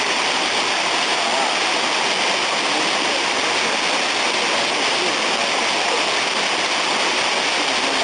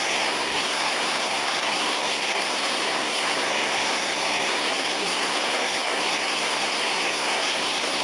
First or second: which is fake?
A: second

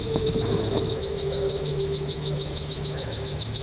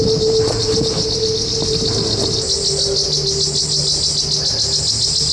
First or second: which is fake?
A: first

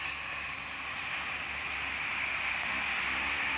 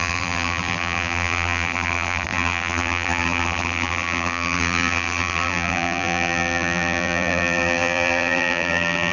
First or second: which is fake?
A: second